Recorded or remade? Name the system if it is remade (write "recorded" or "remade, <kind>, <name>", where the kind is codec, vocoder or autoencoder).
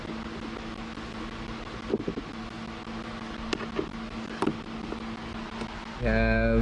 recorded